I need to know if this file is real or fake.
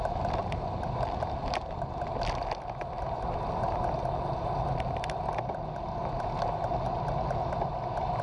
real